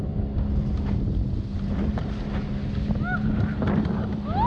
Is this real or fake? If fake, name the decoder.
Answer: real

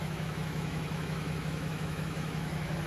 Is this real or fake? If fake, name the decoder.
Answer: fake, autoencoder, DAC-VAE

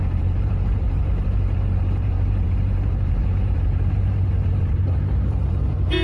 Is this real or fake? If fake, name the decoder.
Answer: fake, vocoder, BigVGAN v2